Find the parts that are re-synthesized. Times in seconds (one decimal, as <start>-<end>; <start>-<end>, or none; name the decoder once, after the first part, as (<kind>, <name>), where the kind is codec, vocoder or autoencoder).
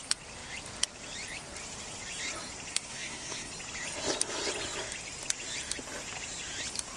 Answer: 2.7-3.5 (codec, SNAC)